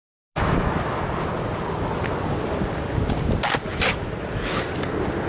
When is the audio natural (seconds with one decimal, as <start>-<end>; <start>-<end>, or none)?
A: 0.0-5.3